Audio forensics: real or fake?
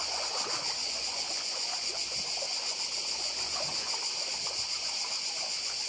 fake